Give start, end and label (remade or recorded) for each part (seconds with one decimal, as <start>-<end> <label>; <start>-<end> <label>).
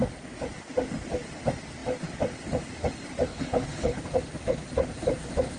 0.0-3.3 recorded; 3.3-4.0 remade; 4.0-5.6 recorded